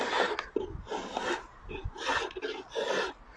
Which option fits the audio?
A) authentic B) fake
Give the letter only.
A